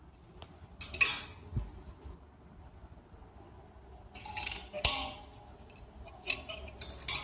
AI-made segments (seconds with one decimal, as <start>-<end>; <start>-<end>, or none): none